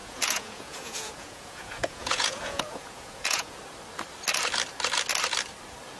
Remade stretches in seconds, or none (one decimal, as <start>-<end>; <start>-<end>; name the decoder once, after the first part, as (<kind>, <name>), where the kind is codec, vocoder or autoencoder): 0.0-3.6 (vocoder, Vocos)